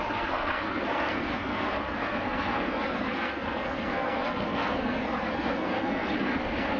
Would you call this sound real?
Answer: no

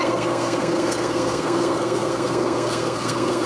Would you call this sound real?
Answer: no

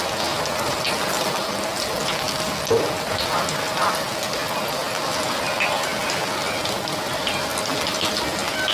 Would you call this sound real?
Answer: yes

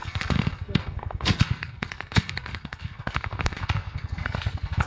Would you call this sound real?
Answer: no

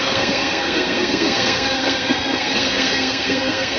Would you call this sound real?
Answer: no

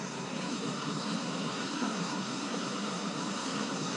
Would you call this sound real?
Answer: no